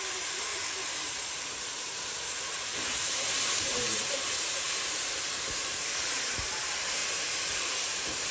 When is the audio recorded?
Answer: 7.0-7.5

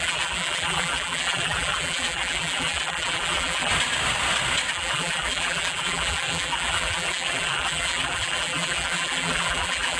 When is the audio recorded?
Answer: 3.7-4.7

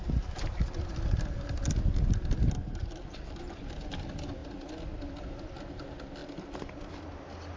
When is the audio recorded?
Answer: 0.0-2.8; 3.6-6.2; 6.8-7.6

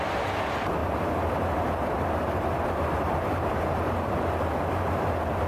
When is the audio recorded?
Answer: 0.0-0.8; 4.1-5.5

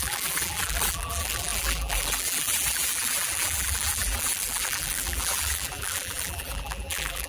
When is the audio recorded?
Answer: none

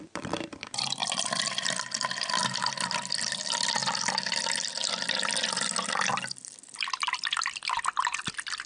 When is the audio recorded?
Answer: 3.8-7.8

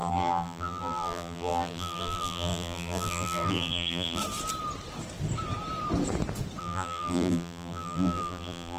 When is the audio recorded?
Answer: 4.2-6.6